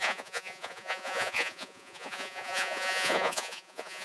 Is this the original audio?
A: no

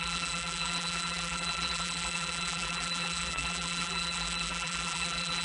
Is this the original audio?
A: no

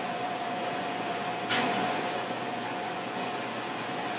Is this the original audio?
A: no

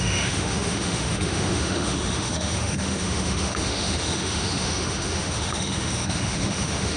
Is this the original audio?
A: no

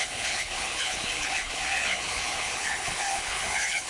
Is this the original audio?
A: no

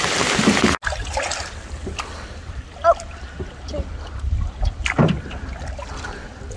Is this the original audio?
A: yes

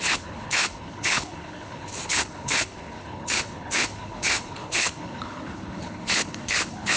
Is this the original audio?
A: no